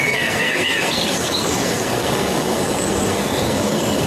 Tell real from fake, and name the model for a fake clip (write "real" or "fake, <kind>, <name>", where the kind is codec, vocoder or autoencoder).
fake, codec, SNAC